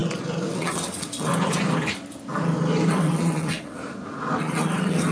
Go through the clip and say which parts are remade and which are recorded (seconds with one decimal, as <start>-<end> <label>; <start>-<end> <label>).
0.0-0.5 recorded; 0.5-1.3 remade; 1.3-2.9 recorded; 2.9-3.8 remade; 3.8-4.4 recorded; 4.4-5.1 remade